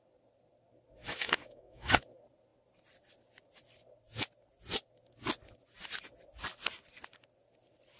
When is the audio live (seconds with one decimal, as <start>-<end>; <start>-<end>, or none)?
0.0-1.0; 2.0-8.0